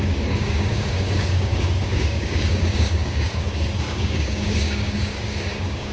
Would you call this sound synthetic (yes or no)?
yes